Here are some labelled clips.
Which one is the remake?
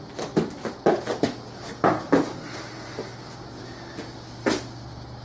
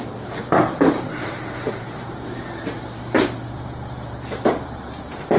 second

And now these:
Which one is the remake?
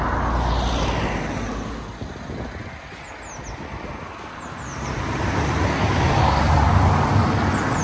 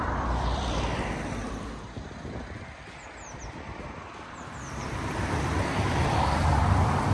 second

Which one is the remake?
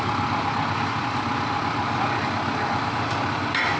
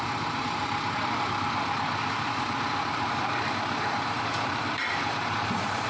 second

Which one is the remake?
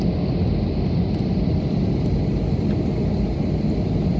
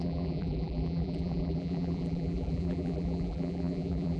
second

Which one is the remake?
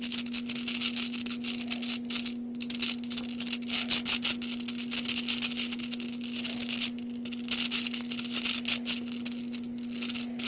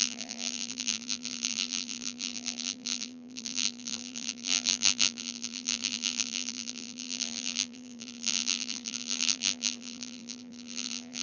second